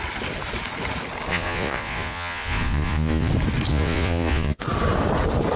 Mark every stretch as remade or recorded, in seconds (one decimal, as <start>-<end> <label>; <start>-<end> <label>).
0.0-1.3 recorded; 1.3-3.3 remade; 3.3-3.7 recorded; 3.7-4.6 remade; 4.6-5.6 recorded